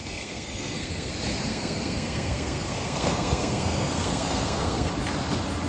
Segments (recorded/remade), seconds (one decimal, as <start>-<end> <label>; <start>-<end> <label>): 0.0-1.1 remade; 1.1-1.5 recorded; 1.5-4.9 remade; 4.9-5.7 recorded

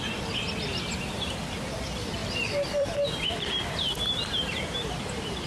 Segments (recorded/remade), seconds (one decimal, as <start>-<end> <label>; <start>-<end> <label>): 0.0-2.2 recorded; 2.2-5.5 remade

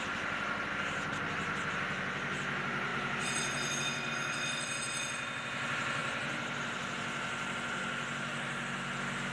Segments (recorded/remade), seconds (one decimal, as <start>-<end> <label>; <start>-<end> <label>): 0.0-2.9 recorded; 2.9-4.1 remade; 4.1-9.3 recorded